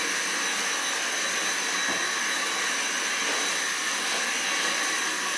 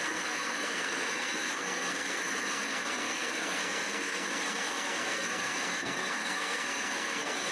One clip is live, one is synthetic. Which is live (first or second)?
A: first